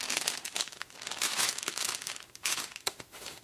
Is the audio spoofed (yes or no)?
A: yes